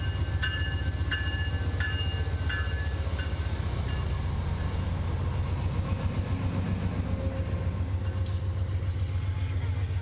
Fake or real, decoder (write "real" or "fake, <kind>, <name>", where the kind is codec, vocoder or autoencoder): real